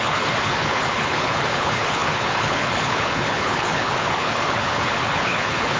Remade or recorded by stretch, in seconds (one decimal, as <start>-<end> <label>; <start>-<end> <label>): 0.0-5.8 remade